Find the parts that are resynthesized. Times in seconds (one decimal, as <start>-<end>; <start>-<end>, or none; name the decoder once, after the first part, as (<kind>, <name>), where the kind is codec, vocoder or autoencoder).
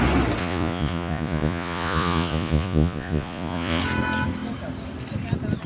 0.4-3.8 (vocoder, Vocos)